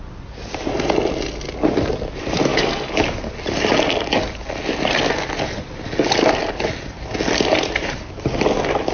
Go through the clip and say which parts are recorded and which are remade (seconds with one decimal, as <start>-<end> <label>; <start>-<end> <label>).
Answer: 0.0-8.9 recorded

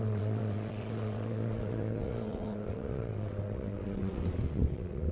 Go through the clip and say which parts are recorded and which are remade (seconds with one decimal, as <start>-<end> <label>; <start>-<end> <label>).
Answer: 0.0-5.1 remade

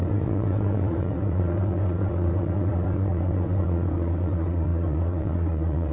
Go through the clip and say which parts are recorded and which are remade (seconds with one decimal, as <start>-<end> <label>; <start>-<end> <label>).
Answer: 0.0-5.9 remade

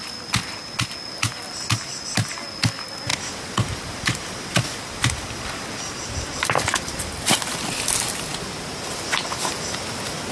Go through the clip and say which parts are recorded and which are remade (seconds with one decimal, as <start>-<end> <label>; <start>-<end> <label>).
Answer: 0.0-10.3 recorded

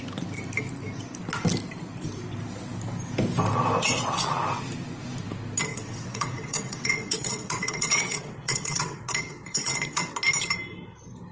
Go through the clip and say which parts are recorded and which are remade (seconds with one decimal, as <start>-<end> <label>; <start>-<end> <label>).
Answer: 0.0-5.7 recorded; 5.7-10.1 remade; 10.1-11.3 recorded

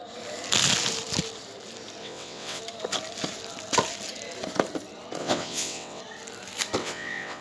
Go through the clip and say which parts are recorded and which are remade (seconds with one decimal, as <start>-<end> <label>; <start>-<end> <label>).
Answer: 0.0-2.0 recorded; 2.0-2.6 remade; 2.6-5.2 recorded; 5.2-6.0 remade; 6.0-6.8 recorded; 6.8-7.4 remade

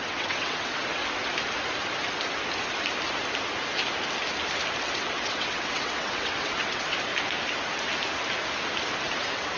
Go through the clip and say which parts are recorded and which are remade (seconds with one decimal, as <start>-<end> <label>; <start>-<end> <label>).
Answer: 0.0-1.0 remade; 1.0-4.8 recorded; 4.8-7.1 remade; 7.1-9.2 recorded; 9.2-9.6 remade

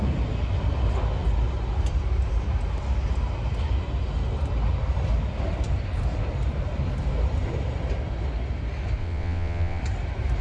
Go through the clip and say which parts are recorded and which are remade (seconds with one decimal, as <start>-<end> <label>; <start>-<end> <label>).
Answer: 0.0-9.0 recorded; 9.0-9.8 remade; 9.8-10.4 recorded